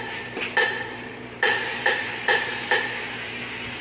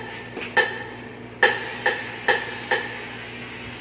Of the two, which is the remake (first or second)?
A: first